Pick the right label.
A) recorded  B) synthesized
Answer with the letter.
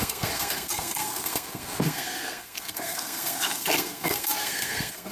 B